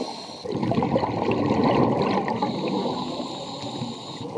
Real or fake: real